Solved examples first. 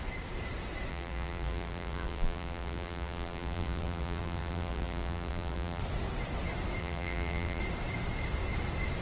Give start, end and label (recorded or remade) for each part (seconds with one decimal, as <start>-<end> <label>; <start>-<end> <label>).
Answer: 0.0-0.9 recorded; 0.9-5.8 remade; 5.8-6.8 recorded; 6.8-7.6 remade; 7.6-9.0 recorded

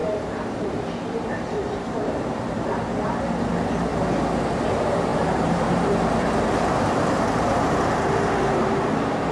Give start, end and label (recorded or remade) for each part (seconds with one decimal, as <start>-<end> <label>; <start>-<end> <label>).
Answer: 0.0-3.9 remade; 3.9-4.5 recorded; 4.5-9.3 remade

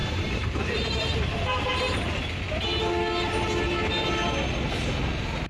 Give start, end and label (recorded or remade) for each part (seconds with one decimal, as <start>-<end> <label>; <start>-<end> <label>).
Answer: 0.0-1.7 remade; 1.7-5.5 recorded

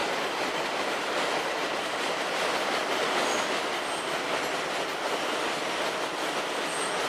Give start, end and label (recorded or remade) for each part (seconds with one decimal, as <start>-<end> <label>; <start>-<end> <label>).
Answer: 0.0-2.0 recorded; 2.0-2.8 remade; 2.8-5.8 recorded; 5.8-7.1 remade